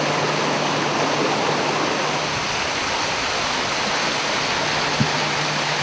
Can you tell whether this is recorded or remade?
recorded